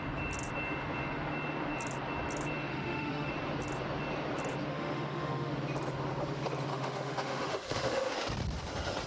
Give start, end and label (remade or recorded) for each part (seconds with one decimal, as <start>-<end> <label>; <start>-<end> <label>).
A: 0.0-2.7 recorded; 2.7-3.3 remade; 3.3-4.7 recorded; 4.7-5.5 remade; 5.5-6.7 recorded; 6.7-8.1 remade; 8.1-9.1 recorded